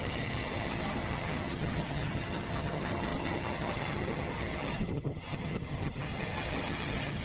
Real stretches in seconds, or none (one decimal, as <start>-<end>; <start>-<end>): none